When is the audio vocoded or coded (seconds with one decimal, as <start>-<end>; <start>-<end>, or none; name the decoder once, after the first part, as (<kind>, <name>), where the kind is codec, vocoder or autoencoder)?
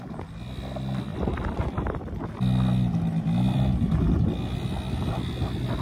none